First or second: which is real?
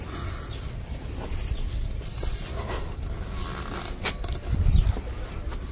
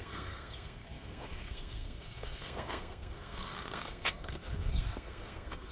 first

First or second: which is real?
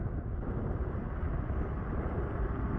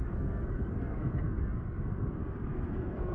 first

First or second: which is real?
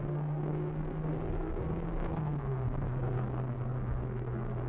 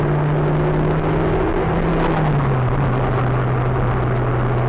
second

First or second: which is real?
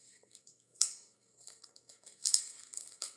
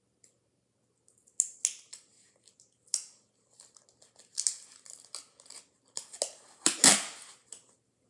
second